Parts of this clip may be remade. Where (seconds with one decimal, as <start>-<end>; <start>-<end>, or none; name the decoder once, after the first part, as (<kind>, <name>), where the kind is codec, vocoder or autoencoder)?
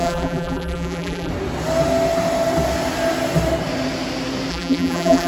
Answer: 0.0-1.3 (vocoder, BigVGAN v2); 4.5-5.3